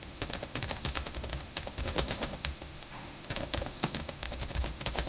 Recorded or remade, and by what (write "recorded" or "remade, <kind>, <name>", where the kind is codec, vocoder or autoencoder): remade, autoencoder, DAC-VAE